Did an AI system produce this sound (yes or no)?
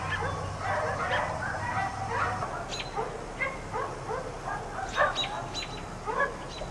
no